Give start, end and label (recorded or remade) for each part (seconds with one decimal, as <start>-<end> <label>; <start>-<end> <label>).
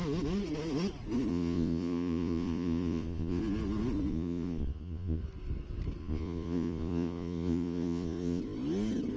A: 0.0-1.3 recorded; 1.3-3.4 remade; 3.4-4.1 recorded; 4.1-5.2 remade; 5.2-6.0 recorded; 6.0-8.4 remade; 8.4-9.2 recorded